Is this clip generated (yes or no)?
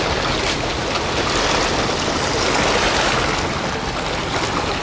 no